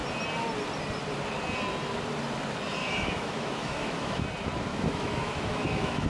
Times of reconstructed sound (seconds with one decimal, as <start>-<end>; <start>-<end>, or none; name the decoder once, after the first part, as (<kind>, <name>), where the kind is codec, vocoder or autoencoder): 2.8-4.2 (autoencoder, DAC-VAE); 4.7-6.1